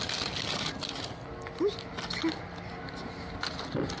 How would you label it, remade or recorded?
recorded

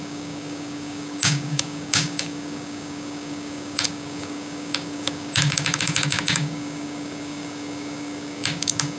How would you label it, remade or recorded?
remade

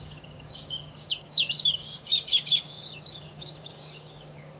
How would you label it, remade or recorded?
remade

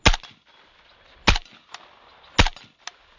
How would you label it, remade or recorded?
recorded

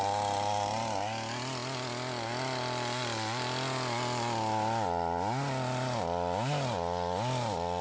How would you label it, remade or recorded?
recorded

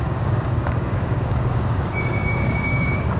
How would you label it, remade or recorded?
remade